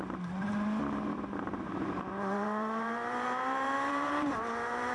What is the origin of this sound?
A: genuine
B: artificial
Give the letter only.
B